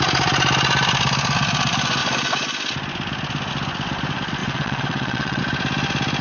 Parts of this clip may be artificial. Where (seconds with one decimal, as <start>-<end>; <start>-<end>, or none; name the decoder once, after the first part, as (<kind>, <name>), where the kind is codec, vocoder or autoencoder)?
4.4-5.4 (vocoder, WaveNeXt)